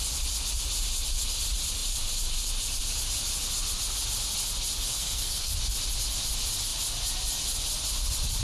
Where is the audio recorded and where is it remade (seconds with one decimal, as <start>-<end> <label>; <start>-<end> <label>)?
0.0-4.9 recorded; 4.9-5.5 remade; 5.5-8.4 recorded